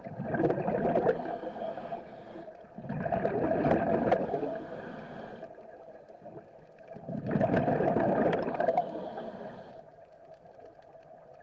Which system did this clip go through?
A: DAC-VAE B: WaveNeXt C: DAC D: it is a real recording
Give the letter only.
D